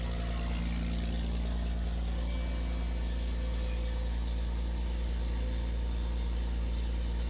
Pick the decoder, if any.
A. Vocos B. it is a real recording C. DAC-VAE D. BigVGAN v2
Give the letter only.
B